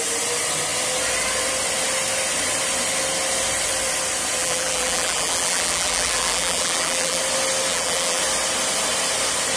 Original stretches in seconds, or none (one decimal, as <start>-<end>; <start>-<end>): 0.0-4.4; 7.2-7.7; 8.2-9.6